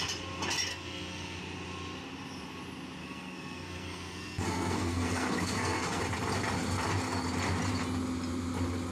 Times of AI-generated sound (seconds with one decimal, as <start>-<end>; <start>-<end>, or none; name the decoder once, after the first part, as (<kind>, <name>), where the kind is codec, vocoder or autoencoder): 0.7-1.4 (codec, SNAC); 3.0-6.0